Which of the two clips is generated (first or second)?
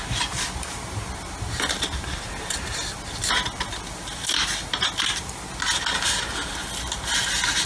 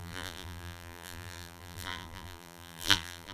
second